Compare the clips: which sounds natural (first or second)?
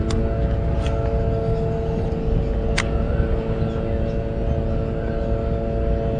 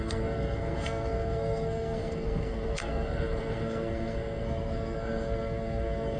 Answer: first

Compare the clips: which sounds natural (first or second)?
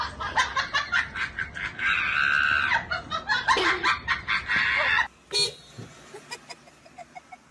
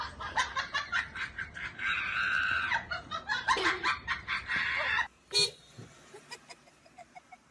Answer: first